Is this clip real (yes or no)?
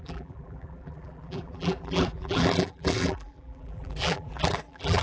no